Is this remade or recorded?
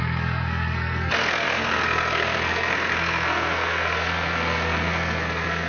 remade